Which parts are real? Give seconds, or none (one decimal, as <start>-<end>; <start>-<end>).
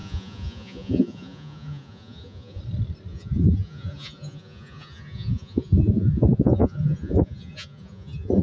2.6-3.1